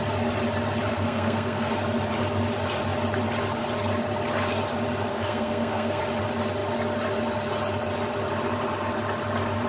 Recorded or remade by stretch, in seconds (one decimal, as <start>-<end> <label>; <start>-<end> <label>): 0.0-0.9 recorded; 0.9-1.7 remade; 1.7-5.1 recorded; 5.1-6.0 remade; 6.0-9.7 recorded

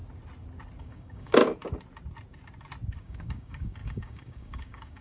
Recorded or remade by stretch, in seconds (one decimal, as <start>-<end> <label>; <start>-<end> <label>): 0.0-0.8 recorded; 0.8-1.4 remade; 1.4-3.0 recorded; 3.0-5.0 remade

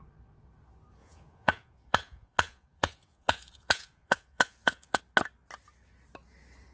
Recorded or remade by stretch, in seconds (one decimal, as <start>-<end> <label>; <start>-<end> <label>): 0.0-1.0 recorded; 1.0-5.0 remade; 5.0-6.7 recorded

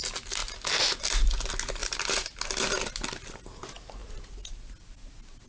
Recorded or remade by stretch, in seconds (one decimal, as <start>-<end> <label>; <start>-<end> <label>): 0.0-1.8 recorded; 1.8-2.4 remade; 2.4-5.5 recorded